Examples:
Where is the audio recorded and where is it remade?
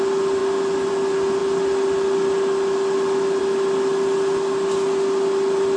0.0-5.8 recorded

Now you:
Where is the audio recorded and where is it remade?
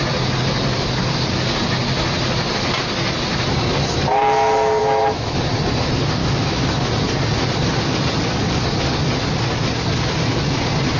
0.0-4.8 recorded; 4.8-5.4 remade; 5.4-6.2 recorded; 6.2-6.9 remade; 6.9-11.0 recorded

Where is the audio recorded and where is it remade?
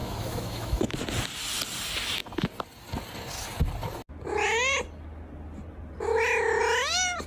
0.0-1.0 remade; 1.0-7.3 recorded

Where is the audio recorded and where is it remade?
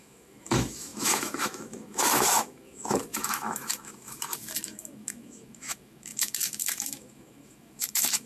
0.0-8.3 remade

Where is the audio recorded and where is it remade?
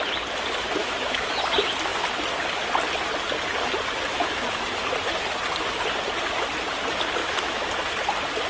0.0-0.8 recorded; 0.8-1.4 remade; 1.4-4.1 recorded; 4.1-4.8 remade; 4.8-7.2 recorded; 7.2-7.7 remade; 7.7-8.5 recorded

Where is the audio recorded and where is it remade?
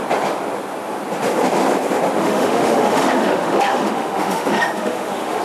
0.0-2.2 recorded; 2.2-5.4 remade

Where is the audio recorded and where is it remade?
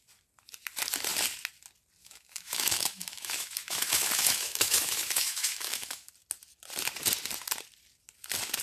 0.0-2.0 recorded; 2.0-6.1 remade; 6.1-8.6 recorded